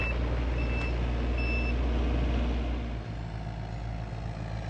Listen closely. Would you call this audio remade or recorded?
recorded